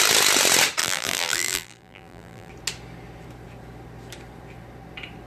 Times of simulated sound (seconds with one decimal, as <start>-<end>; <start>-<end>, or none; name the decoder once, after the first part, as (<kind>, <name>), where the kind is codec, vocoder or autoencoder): 0.8-2.5 (vocoder, BigVGAN v2)